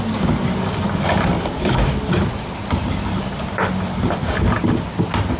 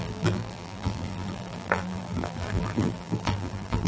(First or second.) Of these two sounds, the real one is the first